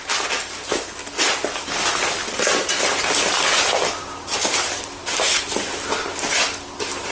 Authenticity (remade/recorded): recorded